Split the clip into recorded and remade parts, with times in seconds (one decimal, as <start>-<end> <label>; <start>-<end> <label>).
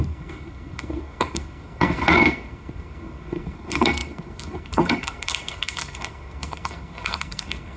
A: 0.0-7.8 remade